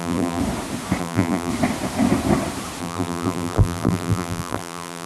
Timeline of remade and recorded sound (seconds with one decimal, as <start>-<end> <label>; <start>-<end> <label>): 0.0-0.4 remade; 0.4-1.0 recorded; 1.0-1.5 remade; 1.5-2.8 recorded; 2.8-5.1 remade